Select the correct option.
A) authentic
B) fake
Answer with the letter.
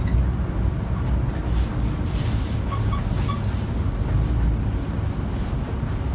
A